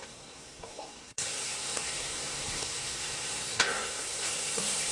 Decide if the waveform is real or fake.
fake